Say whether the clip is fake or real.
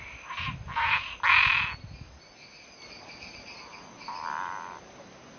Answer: real